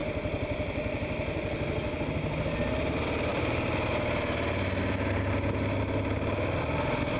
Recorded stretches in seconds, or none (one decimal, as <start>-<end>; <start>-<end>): 2.0-3.3; 3.9-7.2